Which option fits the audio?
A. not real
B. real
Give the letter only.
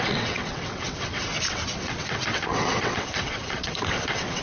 A